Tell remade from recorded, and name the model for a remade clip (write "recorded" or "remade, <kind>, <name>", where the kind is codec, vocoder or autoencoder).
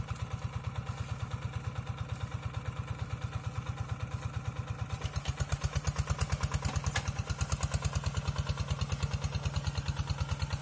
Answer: recorded